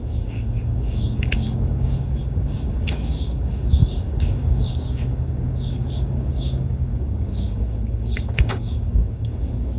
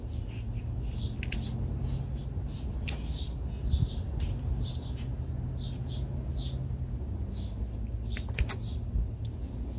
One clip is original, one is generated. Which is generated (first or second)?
first